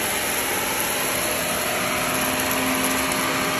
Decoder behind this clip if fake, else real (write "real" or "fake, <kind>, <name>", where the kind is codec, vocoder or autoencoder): real